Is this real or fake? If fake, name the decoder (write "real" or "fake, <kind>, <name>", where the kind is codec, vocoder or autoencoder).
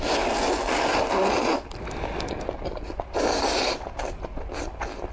real